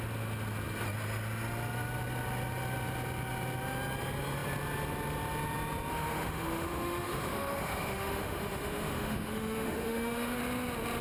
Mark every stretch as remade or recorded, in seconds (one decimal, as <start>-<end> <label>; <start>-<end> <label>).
0.0-5.9 recorded; 5.9-10.4 remade; 10.4-11.0 recorded